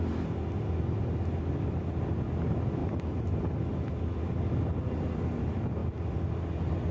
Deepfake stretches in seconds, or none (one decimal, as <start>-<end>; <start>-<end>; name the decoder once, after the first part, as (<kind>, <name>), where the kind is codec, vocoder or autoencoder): none